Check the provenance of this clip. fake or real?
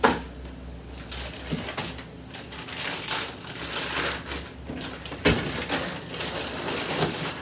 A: real